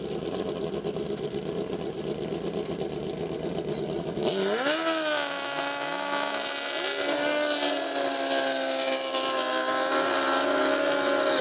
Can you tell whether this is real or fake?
real